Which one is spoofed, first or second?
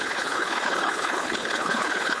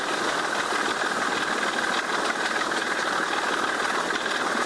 first